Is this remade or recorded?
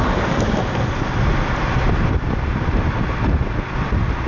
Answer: recorded